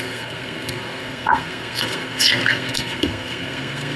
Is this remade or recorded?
remade